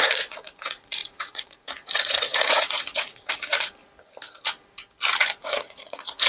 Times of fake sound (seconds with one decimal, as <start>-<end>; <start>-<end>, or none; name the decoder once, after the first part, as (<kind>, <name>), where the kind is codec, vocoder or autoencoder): 0.0-3.8 (vocoder, Vocos); 5.2-6.3